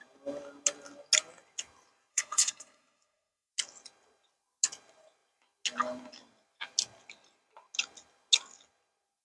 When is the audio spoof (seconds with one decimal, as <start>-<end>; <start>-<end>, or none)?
2.1-3.5